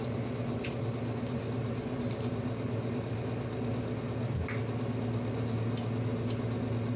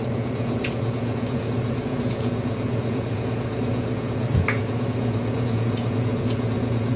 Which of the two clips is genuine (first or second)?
first